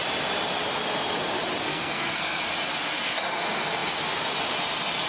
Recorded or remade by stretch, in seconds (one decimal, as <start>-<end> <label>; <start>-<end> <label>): 0.0-1.7 recorded; 1.7-2.4 remade; 2.4-5.1 recorded

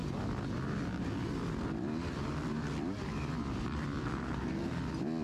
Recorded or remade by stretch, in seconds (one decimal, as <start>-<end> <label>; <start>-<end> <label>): 0.0-4.0 recorded; 4.0-4.8 remade; 4.8-5.2 recorded